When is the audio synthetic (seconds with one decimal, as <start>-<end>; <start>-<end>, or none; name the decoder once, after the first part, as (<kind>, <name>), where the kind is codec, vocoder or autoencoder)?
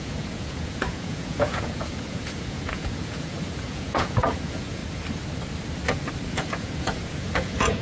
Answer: 0.0-4.8 (vocoder, Vocos); 6.3-7.8